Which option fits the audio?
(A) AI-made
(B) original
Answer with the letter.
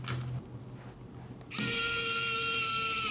B